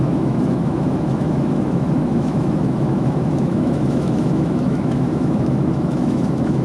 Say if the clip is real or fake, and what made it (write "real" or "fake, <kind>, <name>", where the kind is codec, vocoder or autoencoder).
fake, autoencoder, DAC-VAE